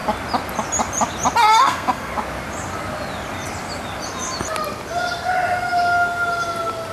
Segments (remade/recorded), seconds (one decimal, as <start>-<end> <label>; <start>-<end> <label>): 0.0-1.5 recorded; 1.5-2.1 remade; 2.1-6.9 recorded